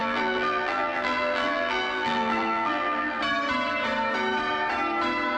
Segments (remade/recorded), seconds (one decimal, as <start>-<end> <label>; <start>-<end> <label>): 0.0-3.2 remade; 3.2-5.4 recorded